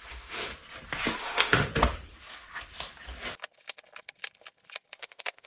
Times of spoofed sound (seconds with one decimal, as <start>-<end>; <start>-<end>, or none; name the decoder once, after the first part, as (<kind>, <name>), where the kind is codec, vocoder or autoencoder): 0.0-0.5 (autoencoder, DAC-VAE); 1.2-1.7; 5.0-5.5